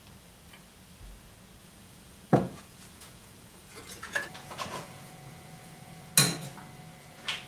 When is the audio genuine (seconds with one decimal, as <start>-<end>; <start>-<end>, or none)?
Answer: 0.0-1.6; 6.1-7.5